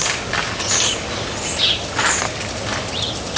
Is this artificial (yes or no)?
no